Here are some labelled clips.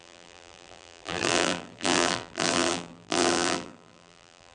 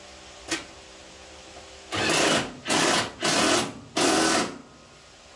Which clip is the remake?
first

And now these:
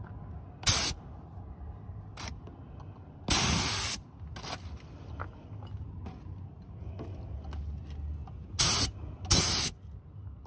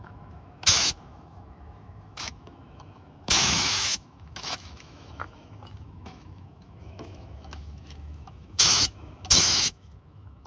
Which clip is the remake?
second